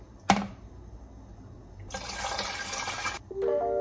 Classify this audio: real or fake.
real